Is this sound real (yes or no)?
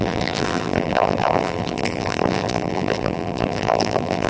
no